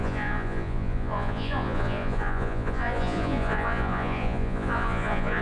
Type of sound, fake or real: fake